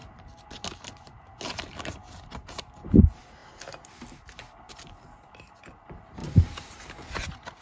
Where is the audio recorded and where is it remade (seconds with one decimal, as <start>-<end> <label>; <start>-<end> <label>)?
0.0-3.4 remade; 3.4-4.7 recorded; 4.7-7.6 remade